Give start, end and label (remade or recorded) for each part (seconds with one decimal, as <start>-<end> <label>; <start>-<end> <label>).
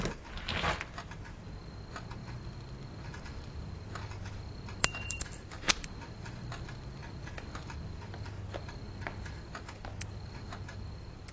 0.0-11.3 recorded